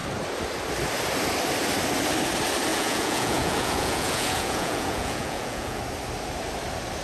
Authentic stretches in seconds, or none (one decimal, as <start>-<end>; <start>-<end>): 0.0-2.7; 5.8-7.0